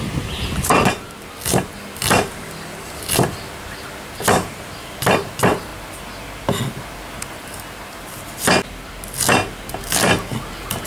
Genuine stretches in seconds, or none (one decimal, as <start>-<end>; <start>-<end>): 0.0-10.9